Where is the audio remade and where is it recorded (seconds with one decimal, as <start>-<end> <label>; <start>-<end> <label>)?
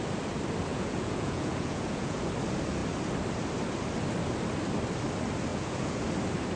0.0-0.7 recorded; 0.7-2.3 remade; 2.3-5.5 recorded; 5.5-6.0 remade; 6.0-6.6 recorded